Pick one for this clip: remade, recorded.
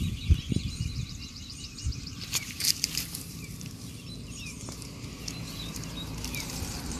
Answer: remade